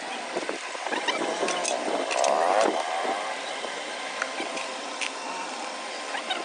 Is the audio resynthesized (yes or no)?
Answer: no